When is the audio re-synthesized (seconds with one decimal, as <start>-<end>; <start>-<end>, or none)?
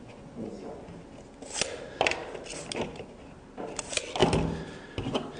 0.0-0.8